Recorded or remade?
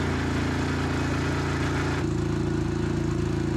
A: recorded